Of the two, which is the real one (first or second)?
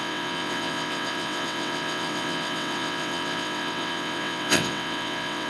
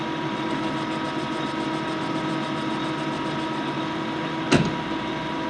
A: second